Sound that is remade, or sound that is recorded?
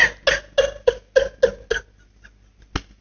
recorded